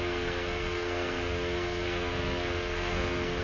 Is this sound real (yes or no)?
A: no